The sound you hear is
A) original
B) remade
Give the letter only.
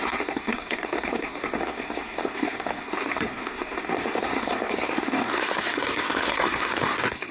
B